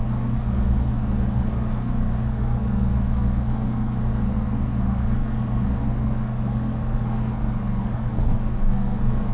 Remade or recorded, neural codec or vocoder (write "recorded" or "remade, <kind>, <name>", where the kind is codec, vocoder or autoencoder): remade, codec, SNAC